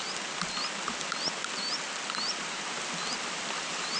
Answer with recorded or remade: recorded